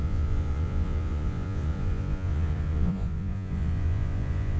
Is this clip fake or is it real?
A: fake